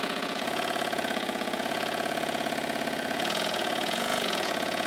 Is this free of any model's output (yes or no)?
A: no